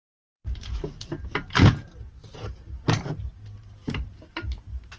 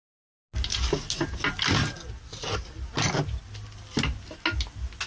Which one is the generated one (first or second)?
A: first